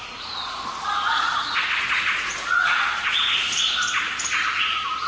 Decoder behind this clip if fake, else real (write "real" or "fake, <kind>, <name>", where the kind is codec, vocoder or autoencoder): fake, vocoder, Vocos